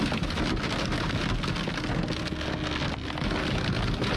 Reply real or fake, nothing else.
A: real